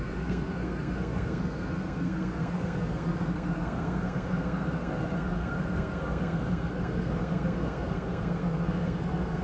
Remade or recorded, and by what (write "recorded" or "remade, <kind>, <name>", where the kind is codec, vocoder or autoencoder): remade, codec, SNAC